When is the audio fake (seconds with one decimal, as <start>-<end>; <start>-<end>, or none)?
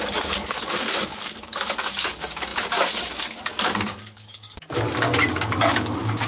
0.0-6.3